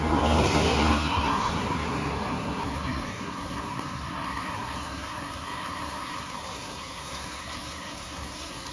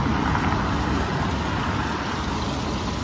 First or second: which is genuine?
second